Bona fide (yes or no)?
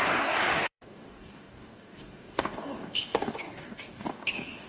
no